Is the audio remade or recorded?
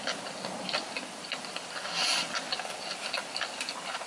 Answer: recorded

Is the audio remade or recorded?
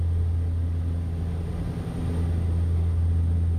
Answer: recorded